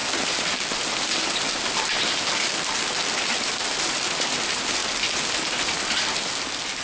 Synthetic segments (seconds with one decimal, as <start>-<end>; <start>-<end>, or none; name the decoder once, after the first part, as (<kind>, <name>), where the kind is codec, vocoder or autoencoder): 1.3-4.8 (vocoder, BigVGAN v2); 6.2-6.8